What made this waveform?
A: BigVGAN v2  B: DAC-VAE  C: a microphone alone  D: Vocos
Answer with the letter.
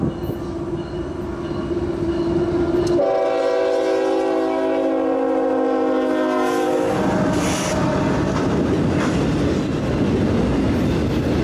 C